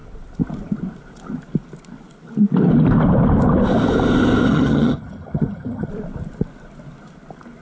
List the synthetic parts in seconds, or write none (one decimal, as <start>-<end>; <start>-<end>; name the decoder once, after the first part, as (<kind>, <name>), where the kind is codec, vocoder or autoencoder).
4.5-5.9 (vocoder, HiFi-GAN)